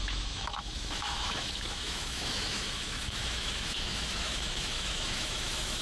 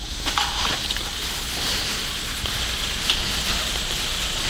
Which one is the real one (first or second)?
second